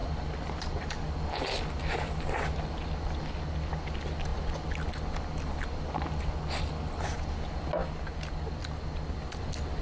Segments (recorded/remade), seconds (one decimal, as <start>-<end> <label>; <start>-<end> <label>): 0.0-9.8 recorded